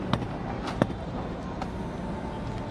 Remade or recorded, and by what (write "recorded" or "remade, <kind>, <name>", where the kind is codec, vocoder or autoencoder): recorded